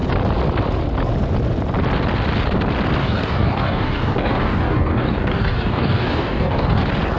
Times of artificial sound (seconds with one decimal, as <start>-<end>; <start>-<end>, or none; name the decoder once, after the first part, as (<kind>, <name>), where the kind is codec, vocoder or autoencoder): 3.0-6.8 (codec, DAC)

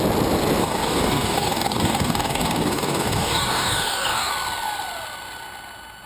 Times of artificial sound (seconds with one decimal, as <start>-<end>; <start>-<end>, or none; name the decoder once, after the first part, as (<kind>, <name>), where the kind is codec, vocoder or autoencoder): 0.6-4.3 (codec, DAC)